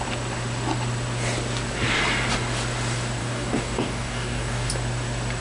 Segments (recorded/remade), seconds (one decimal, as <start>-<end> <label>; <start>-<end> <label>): 0.0-3.2 recorded; 3.2-4.7 remade; 4.7-5.4 recorded